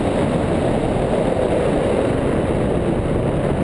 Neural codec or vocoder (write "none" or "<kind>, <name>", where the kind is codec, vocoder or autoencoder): none